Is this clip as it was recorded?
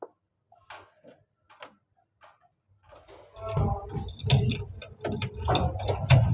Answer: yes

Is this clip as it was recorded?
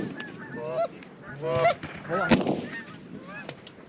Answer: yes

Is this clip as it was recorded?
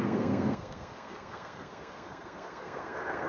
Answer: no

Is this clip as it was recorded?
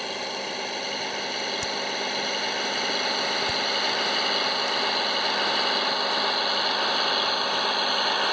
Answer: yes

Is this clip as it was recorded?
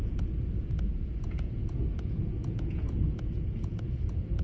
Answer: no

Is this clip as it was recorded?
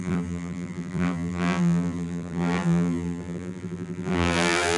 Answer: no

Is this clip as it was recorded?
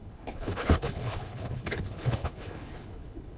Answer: no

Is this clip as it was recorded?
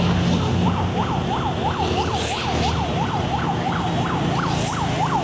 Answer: yes